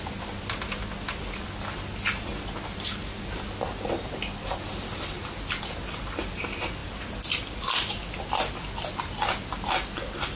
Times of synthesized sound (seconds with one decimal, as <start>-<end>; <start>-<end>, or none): none